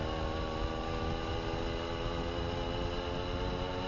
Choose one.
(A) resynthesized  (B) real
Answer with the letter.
B